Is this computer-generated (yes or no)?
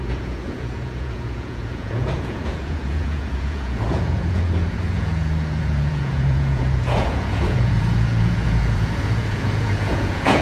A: yes